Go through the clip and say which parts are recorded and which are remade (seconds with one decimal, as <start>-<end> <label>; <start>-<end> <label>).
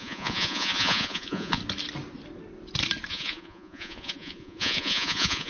0.0-1.6 remade; 1.6-3.1 recorded; 3.1-5.5 remade